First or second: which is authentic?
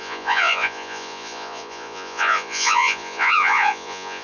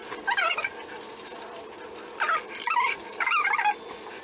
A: second